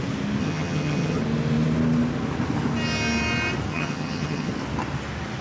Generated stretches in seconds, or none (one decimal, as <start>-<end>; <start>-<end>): 0.4-1.2; 3.7-4.5